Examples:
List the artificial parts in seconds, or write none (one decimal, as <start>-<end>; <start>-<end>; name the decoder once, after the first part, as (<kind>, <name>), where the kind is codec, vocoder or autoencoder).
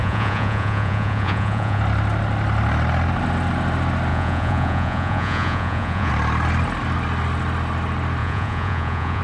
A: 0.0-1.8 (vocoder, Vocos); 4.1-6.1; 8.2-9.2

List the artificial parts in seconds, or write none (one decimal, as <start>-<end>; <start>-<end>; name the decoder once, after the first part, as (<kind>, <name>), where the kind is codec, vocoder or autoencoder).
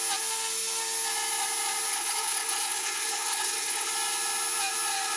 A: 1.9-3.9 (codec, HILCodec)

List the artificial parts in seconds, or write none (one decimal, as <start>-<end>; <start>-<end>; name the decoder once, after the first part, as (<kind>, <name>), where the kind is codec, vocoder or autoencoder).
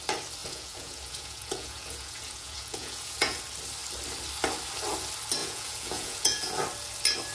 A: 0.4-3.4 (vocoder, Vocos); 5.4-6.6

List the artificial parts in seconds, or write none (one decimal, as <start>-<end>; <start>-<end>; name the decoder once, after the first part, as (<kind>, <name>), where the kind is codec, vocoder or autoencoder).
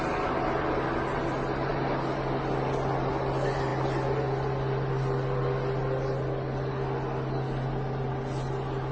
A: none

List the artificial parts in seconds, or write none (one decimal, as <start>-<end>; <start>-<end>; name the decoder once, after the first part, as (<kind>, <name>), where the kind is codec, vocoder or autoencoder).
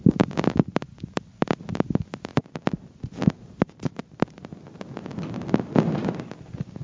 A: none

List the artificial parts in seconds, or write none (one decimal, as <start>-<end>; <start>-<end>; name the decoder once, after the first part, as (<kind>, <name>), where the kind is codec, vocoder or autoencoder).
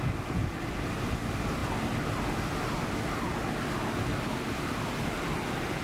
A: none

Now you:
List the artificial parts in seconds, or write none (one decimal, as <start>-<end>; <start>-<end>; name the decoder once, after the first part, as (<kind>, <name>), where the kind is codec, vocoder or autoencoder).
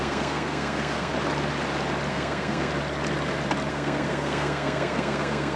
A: 0.0-1.1 (codec, SNAC); 2.1-2.7; 3.7-5.6